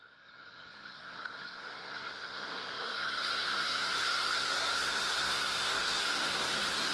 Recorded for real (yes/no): no